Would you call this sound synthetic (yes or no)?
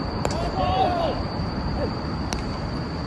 yes